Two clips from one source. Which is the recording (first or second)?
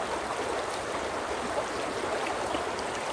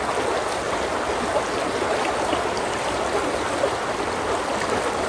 second